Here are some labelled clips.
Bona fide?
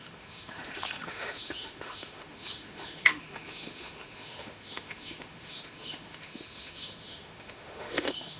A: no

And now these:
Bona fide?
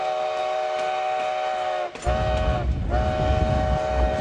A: yes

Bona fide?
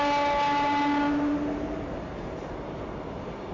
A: yes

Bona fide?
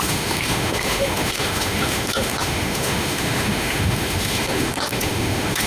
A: no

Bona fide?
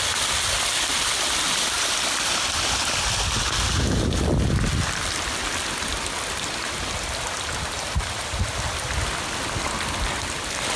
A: yes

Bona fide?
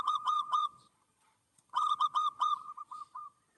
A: no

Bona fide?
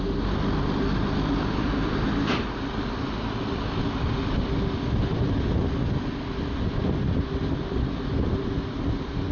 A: yes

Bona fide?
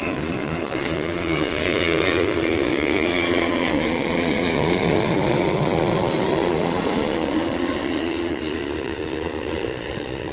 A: no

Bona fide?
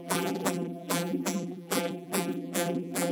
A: no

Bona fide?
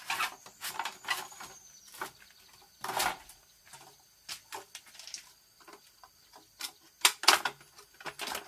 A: yes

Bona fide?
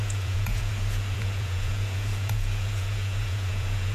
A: no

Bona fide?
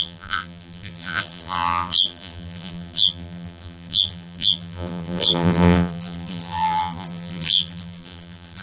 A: no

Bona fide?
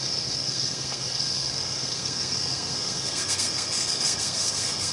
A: no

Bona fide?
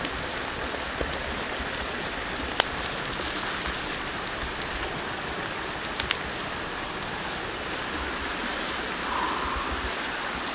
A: yes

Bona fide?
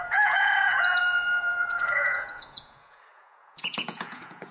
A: no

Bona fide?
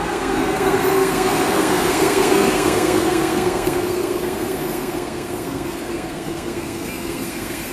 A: no